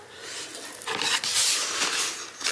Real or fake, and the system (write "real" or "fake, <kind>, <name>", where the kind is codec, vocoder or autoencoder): real